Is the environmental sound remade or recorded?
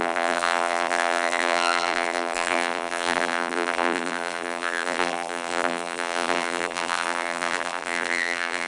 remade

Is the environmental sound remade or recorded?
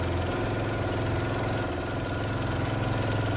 recorded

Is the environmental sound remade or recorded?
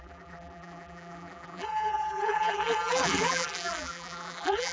remade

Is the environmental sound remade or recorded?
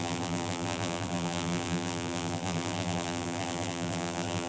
remade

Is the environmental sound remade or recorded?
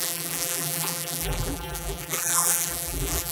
remade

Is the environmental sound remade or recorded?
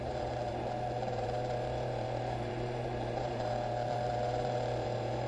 remade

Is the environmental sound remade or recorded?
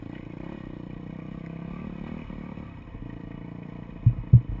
recorded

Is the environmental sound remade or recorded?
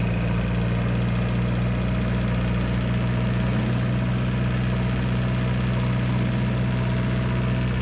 recorded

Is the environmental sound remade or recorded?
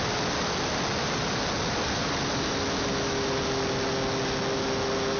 recorded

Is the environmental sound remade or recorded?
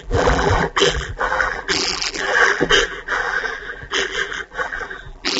remade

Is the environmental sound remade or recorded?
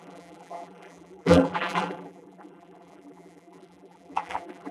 remade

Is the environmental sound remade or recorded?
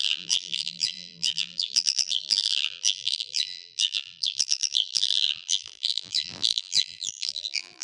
remade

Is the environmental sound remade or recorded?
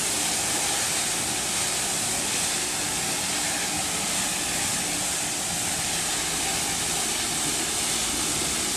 recorded